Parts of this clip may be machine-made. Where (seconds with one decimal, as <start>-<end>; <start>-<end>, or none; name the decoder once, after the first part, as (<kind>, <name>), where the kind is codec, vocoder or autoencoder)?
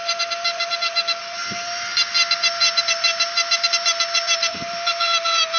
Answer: none